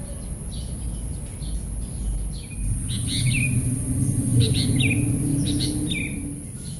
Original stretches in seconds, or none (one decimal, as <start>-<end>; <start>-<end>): 0.0-4.3; 4.9-6.8